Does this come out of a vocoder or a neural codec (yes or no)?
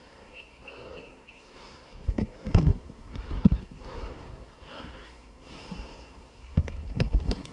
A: yes